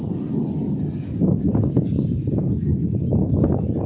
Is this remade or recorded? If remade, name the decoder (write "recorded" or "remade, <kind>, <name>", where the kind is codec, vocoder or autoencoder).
recorded